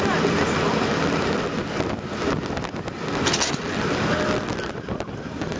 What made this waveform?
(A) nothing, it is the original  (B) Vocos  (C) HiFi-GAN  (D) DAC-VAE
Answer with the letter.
A